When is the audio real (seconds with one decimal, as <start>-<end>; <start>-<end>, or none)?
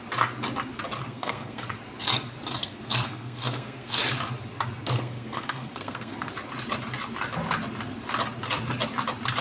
0.0-1.0; 1.7-2.6; 4.0-4.8; 6.3-9.4